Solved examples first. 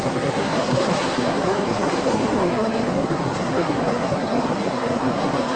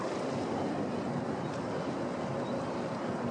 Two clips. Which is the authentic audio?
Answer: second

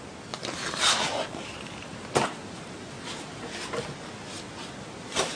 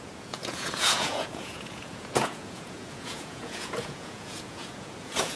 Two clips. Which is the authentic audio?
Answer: first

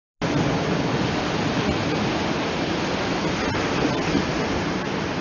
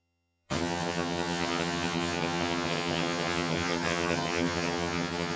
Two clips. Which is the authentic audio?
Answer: first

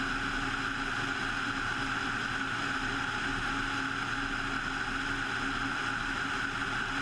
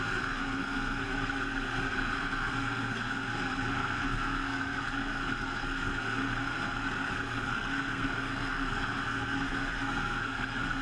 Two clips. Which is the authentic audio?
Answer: first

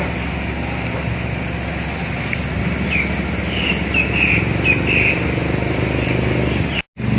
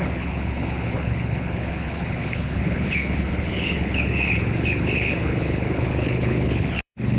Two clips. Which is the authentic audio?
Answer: first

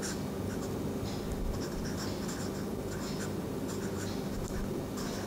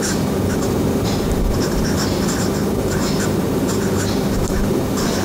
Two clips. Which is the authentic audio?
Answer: first